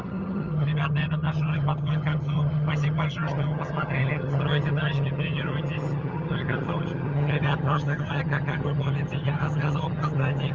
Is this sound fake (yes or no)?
yes